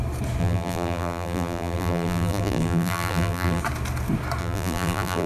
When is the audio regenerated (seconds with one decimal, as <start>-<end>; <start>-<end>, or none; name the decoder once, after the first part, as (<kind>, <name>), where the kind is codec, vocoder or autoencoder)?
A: 0.4-3.6 (vocoder, BigVGAN v2); 4.4-5.3